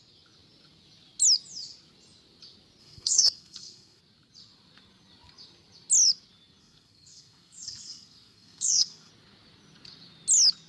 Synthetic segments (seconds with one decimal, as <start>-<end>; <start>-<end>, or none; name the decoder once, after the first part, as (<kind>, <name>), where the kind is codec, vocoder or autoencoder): 2.8-4.0 (codec, SNAC); 6.6-9.1